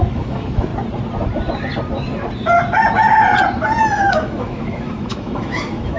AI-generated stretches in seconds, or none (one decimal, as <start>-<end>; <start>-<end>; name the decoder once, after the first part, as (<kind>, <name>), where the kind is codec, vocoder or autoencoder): 0.0-0.7 (autoencoder, DAC-VAE); 4.1-6.0